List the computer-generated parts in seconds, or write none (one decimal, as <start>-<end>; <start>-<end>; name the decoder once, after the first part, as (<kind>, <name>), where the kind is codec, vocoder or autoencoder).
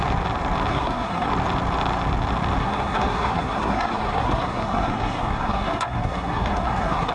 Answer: 0.7-1.3 (codec, SNAC); 2.6-7.1